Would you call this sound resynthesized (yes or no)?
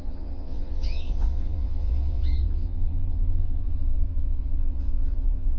yes